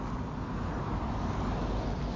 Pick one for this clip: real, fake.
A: real